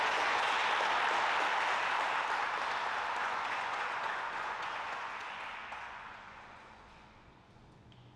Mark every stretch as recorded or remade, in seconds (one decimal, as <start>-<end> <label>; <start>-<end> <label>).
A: 0.0-0.6 remade; 0.6-3.2 recorded; 3.2-8.2 remade